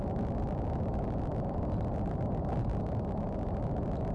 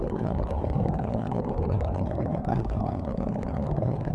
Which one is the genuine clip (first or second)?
first